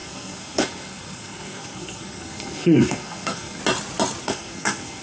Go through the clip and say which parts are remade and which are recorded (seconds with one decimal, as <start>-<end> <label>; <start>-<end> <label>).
0.0-3.6 remade; 3.6-4.2 recorded; 4.2-5.0 remade